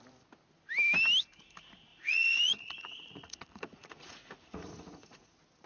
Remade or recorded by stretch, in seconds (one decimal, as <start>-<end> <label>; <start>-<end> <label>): 0.0-1.9 recorded; 1.9-5.3 remade; 5.3-5.7 recorded